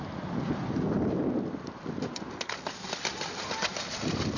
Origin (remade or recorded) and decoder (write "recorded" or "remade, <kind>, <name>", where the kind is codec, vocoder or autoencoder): recorded